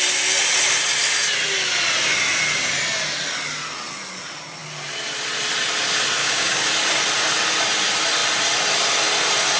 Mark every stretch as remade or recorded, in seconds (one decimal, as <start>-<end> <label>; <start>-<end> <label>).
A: 0.0-6.2 recorded; 6.2-6.7 remade; 6.7-9.6 recorded